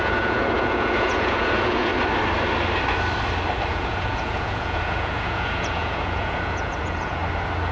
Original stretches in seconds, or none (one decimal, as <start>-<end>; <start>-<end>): 1.9-3.7; 7.2-7.7